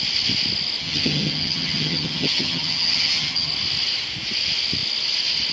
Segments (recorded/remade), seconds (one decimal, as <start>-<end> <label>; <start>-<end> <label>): 0.0-0.8 recorded; 0.8-3.5 remade; 3.5-5.5 recorded